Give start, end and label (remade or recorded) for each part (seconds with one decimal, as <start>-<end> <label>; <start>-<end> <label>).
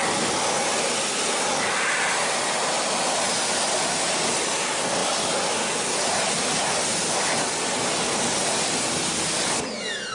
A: 0.0-10.1 recorded